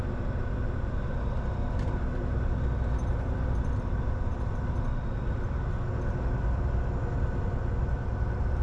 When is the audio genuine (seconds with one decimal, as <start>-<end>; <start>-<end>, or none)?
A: 0.0-8.6